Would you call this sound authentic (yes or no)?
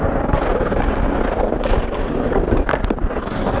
yes